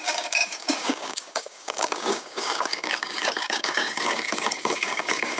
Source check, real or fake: fake